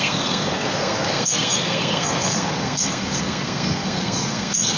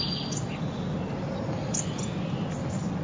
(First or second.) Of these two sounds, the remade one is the first